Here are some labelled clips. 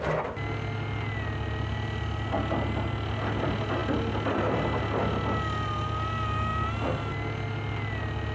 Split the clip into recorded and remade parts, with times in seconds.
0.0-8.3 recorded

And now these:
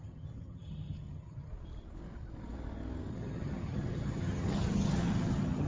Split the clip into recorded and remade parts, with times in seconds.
0.0-1.5 remade; 1.5-3.1 recorded; 3.1-5.7 remade